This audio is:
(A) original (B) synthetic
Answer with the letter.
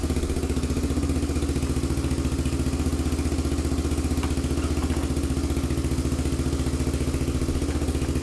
A